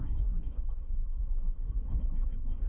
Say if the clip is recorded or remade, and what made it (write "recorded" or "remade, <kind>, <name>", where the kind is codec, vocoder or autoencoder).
remade, codec, SNAC